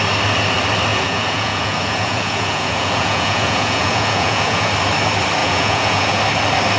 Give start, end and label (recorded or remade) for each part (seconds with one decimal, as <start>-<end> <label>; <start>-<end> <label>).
0.0-0.9 recorded; 0.9-4.7 remade; 4.7-5.4 recorded; 5.4-6.2 remade; 6.2-6.8 recorded